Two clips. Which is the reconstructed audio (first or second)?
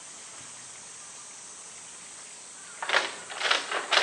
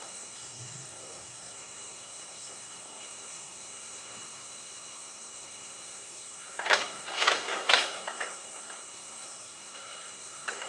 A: second